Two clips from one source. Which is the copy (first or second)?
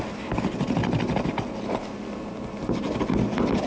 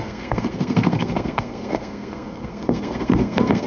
second